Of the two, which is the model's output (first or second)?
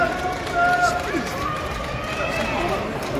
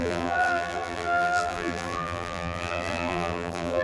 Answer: second